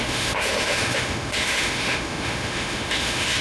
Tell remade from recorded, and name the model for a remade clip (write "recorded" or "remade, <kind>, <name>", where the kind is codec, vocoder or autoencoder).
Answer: remade, autoencoder, DAC-VAE